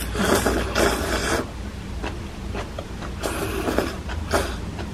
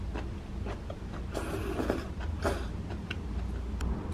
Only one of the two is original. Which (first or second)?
second